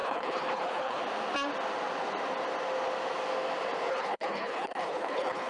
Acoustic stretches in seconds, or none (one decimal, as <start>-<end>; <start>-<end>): 1.0-3.9